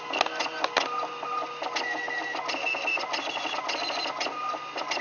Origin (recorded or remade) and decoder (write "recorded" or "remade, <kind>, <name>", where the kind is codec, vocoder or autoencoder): recorded